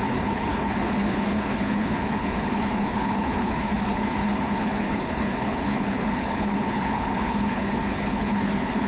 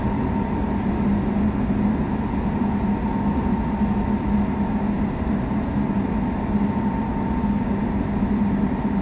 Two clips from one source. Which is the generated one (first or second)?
first